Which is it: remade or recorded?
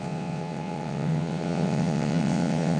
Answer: remade